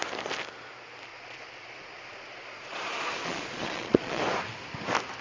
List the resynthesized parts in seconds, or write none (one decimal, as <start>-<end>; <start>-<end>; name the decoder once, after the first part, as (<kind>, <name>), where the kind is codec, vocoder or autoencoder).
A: 1.1-4.2 (vocoder, Vocos)